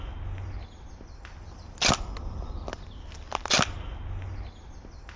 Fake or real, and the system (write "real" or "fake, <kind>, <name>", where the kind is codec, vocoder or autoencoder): real